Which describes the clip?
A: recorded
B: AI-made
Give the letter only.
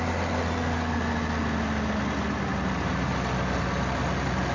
A